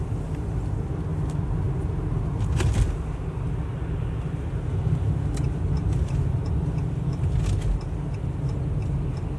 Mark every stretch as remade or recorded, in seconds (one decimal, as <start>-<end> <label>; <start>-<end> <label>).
0.0-9.4 recorded